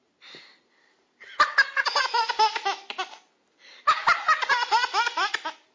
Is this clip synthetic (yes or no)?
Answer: no